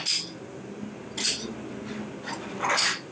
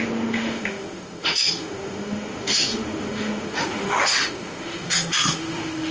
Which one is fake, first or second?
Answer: second